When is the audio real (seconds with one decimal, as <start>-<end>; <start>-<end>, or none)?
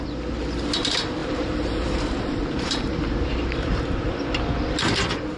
0.0-1.2; 4.4-5.4